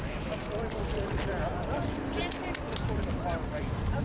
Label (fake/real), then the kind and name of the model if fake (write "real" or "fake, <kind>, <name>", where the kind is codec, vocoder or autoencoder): real